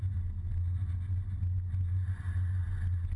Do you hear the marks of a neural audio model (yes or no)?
no